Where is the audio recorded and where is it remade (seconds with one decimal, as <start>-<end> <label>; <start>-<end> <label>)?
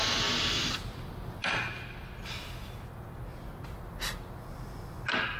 0.0-5.4 recorded